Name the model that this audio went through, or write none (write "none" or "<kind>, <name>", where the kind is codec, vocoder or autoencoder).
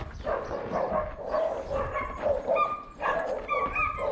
none